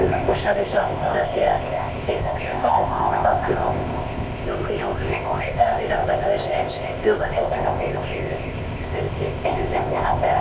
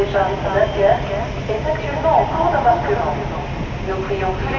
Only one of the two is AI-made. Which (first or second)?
first